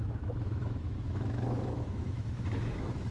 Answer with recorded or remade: remade